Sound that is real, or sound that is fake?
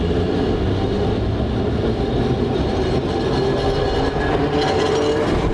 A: real